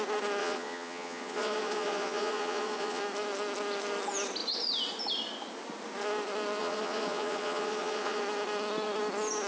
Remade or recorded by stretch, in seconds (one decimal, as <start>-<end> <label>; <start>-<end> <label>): 0.0-0.4 recorded; 0.4-3.0 remade; 3.0-6.6 recorded; 6.6-8.2 remade; 8.2-9.5 recorded